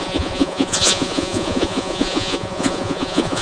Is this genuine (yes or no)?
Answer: no